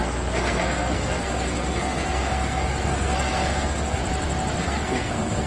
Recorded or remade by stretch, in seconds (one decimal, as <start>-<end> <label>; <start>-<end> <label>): 0.0-4.0 remade; 4.0-4.6 recorded; 4.6-5.5 remade